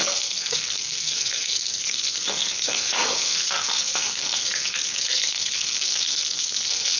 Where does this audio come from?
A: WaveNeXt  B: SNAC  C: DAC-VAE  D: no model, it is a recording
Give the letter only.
B